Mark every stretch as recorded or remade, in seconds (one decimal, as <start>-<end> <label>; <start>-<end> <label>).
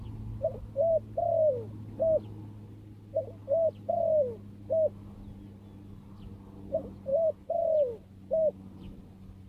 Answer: 0.0-7.1 recorded; 7.1-9.0 remade; 9.0-9.5 recorded